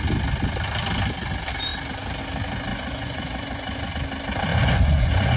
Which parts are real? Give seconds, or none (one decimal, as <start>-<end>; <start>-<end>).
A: 0.0-2.7; 3.9-4.5